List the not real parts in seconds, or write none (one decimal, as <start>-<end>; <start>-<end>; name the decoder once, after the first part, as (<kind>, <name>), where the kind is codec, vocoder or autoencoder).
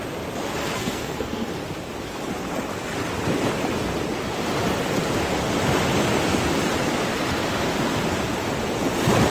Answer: 0.6-1.5 (codec, SNAC)